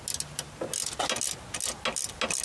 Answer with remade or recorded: recorded